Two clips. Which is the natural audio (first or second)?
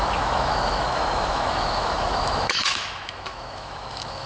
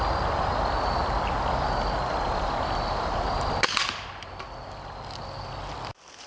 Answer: second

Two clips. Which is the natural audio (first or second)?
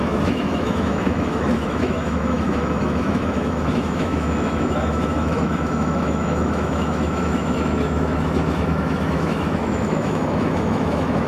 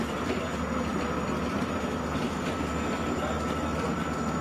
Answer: second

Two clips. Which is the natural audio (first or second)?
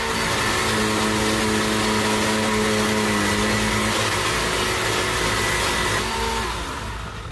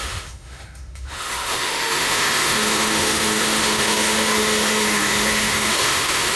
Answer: first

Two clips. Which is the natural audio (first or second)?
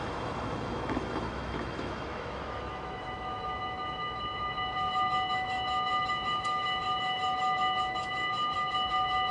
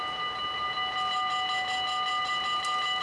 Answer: second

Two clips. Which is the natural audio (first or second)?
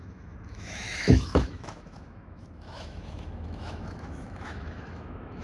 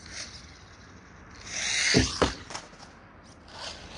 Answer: second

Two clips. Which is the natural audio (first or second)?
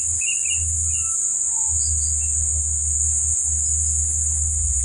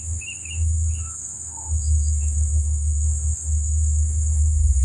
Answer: first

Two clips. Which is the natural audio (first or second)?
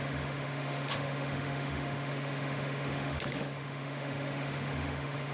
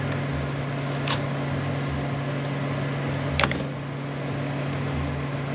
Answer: second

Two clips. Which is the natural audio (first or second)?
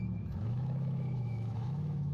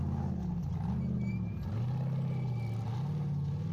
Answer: second